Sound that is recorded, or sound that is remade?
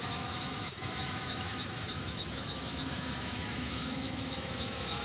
remade